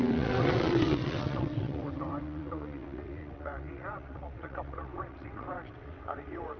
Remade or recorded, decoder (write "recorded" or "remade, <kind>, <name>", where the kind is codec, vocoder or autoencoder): remade, vocoder, WaveNeXt